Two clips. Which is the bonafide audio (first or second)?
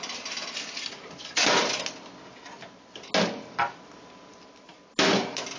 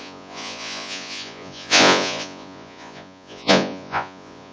first